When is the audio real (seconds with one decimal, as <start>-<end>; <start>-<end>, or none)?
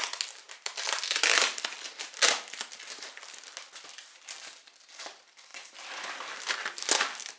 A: 0.0-7.4